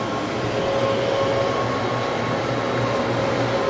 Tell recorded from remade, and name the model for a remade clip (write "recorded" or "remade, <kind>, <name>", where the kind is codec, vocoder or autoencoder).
recorded